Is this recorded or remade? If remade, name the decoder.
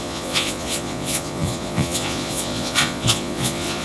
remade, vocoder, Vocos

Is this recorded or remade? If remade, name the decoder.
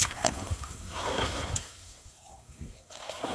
remade, codec, SNAC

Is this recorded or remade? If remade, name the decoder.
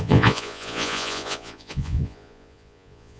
remade, vocoder, Vocos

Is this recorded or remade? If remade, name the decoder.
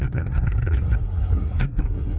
remade, codec, SNAC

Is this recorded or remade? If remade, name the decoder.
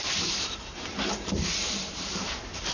remade, vocoder, BigVGAN v2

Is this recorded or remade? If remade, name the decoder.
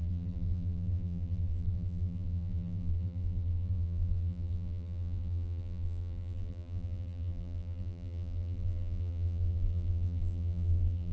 remade, vocoder, BigVGAN v2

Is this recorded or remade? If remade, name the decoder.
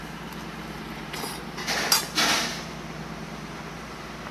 recorded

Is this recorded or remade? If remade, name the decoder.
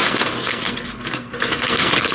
remade, codec, SNAC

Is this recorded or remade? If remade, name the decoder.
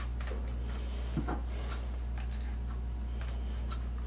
recorded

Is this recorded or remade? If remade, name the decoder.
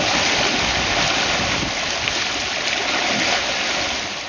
recorded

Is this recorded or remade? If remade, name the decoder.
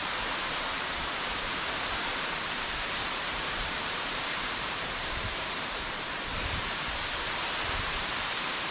remade, vocoder, BigVGAN v2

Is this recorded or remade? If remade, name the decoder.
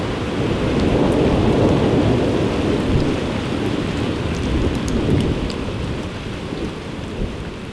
recorded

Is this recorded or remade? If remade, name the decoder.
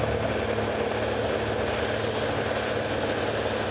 recorded